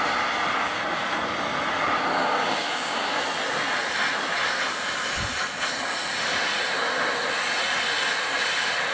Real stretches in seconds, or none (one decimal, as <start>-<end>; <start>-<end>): 0.0-2.2; 3.2-8.9